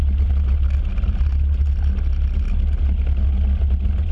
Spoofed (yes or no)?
no